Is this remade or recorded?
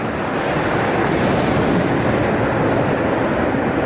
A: recorded